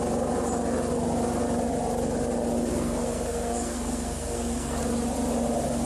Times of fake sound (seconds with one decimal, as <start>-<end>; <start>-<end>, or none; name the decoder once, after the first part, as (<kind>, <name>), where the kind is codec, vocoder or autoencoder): 2.7-4.8 (codec, SNAC)